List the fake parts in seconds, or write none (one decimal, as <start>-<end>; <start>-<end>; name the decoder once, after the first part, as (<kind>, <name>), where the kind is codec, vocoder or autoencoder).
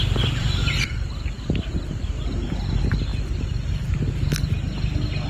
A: 0.4-1.1 (vocoder, BigVGAN v2)